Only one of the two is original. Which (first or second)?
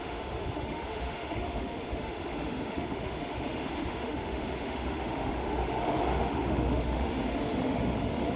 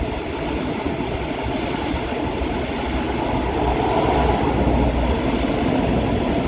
second